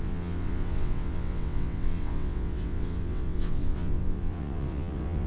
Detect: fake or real fake